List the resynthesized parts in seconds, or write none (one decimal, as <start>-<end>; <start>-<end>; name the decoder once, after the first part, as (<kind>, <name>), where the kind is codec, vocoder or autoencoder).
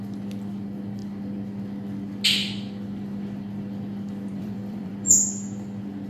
4.3-4.9 (vocoder, BigVGAN v2)